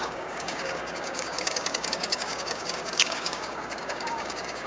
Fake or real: fake